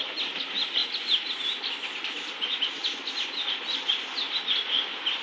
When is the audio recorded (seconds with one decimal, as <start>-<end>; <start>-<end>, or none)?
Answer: 0.0-5.2